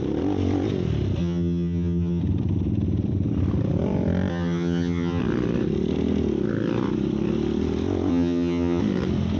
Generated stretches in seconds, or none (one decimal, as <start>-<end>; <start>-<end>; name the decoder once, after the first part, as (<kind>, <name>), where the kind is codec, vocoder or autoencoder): 1.2-2.2 (vocoder, HiFi-GAN); 4.3-5.2; 8.1-8.8